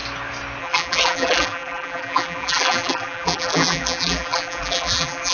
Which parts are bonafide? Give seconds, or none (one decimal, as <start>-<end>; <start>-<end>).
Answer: 0.0-0.6